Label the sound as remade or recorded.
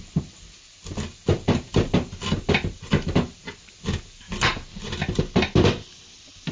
recorded